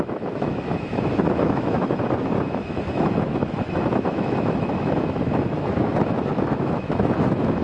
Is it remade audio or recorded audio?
remade